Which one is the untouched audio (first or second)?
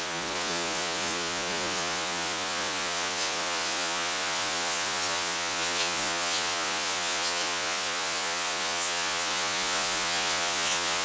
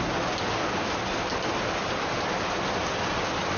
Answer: second